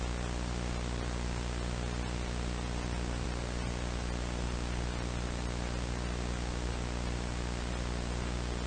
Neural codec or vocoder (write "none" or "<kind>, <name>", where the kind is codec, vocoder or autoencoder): none